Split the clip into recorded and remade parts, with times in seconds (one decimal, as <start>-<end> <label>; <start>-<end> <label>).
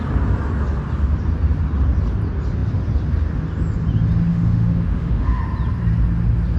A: 0.0-4.3 recorded; 4.3-5.4 remade; 5.4-6.6 recorded